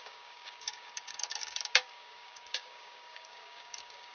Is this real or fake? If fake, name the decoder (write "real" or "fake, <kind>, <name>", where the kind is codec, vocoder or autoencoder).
fake, codec, DAC